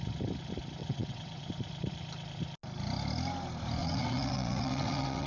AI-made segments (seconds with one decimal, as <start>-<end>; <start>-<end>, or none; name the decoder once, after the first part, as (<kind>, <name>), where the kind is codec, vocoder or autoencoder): 0.8-1.5 (vocoder, WaveNeXt); 3.8-5.3